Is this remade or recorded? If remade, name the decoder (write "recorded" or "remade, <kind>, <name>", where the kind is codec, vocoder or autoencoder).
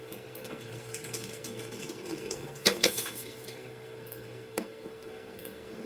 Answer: remade, codec, SNAC